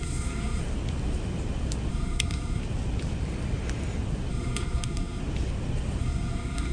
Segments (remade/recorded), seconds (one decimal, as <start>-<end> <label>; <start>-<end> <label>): 0.0-0.6 remade; 0.6-1.9 recorded; 1.9-2.6 remade; 2.6-4.3 recorded; 4.3-5.2 remade; 5.2-6.0 recorded; 6.0-6.7 remade